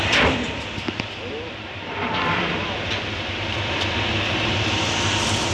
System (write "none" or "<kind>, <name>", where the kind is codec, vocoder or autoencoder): vocoder, BigVGAN v2